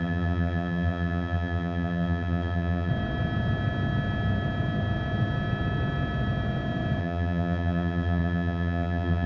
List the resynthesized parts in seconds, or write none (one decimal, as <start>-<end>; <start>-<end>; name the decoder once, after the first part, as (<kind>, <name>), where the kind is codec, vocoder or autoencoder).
0.0-2.9 (vocoder, BigVGAN v2); 7.0-9.3